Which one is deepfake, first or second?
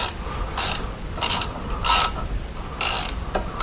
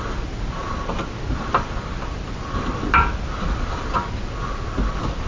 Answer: first